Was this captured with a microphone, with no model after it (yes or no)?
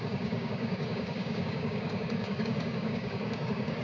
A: no